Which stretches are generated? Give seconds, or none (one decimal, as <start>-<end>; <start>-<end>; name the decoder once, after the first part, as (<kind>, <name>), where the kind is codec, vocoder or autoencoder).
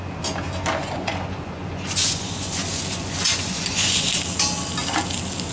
0.8-4.1 (vocoder, Vocos)